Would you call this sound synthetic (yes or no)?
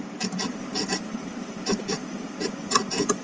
no